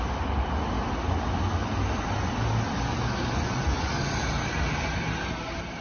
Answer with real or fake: real